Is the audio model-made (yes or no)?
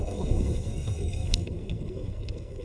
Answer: yes